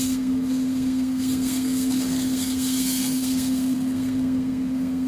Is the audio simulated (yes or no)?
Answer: yes